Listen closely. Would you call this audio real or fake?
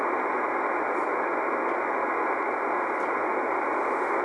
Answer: real